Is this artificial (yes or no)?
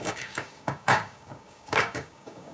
yes